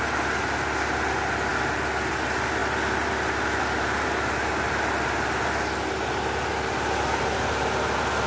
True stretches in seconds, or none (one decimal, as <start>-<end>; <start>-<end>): 0.0-8.3